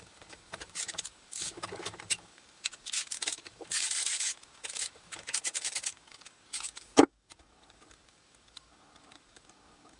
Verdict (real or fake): fake